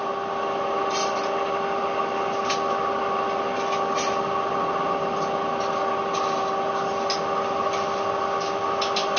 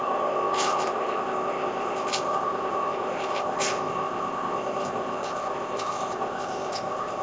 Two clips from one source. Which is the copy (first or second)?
second